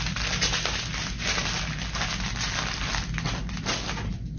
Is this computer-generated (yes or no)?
no